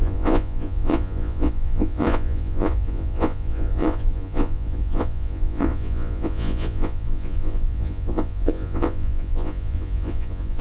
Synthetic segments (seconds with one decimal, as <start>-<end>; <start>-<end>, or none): 0.0-10.6

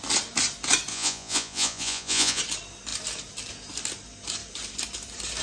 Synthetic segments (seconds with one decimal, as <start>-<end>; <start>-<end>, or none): 0.9-2.4

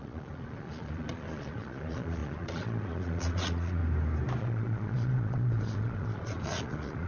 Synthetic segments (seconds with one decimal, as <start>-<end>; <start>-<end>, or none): 0.0-3.8; 4.4-7.1

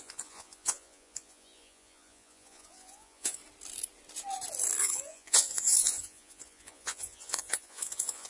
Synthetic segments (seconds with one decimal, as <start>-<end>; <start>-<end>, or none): 0.0-3.4; 4.8-8.3